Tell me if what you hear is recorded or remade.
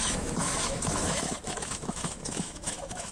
remade